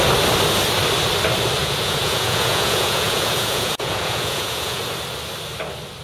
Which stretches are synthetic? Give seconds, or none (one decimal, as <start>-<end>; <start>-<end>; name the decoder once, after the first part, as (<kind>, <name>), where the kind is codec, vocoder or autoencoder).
1.6-4.8 (vocoder, Vocos)